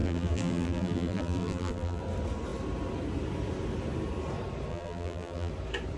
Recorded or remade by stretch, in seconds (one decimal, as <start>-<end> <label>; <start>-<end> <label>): 0.0-2.0 remade; 2.0-4.7 recorded; 4.7-5.5 remade; 5.5-6.0 recorded